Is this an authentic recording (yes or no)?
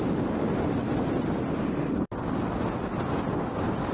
yes